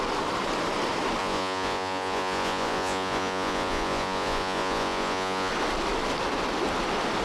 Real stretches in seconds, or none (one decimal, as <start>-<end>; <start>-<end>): 0.0-1.2; 5.5-7.2